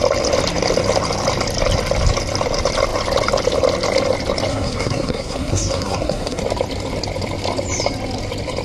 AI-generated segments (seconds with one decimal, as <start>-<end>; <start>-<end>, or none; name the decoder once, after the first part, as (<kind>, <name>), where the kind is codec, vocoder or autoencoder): 4.5-6.4 (codec, SNAC)